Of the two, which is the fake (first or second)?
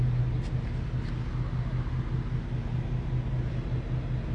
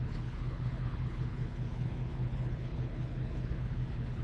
second